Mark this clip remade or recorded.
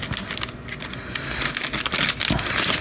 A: recorded